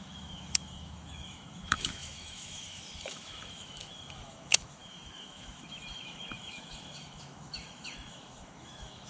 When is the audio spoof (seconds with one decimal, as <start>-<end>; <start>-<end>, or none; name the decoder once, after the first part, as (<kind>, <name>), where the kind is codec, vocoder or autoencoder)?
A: 0.0-9.1 (autoencoder, DAC-VAE)